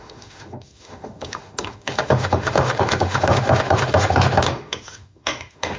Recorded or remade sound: remade